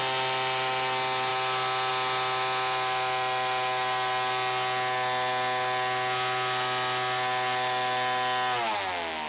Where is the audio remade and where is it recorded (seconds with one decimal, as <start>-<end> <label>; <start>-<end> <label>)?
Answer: 0.0-9.3 recorded